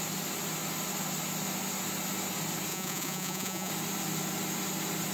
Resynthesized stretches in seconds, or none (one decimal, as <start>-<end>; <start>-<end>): 2.7-3.7